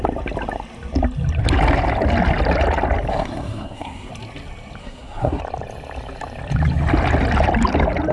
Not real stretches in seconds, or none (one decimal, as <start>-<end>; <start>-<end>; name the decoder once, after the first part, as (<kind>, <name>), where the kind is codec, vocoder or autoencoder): 3.1-4.1 (codec, SNAC); 4.8-5.4